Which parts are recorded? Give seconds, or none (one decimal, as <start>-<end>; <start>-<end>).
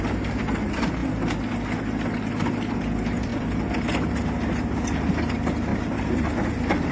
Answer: 0.0-6.9